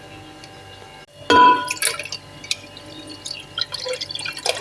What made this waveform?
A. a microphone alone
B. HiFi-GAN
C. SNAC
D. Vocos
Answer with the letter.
A